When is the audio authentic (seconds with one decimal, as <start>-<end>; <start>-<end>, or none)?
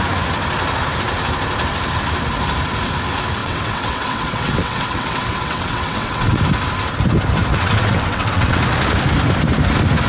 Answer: 0.0-3.4; 6.4-7.5; 8.6-10.1